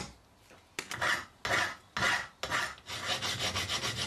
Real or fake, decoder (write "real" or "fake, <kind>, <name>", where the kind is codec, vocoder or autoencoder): real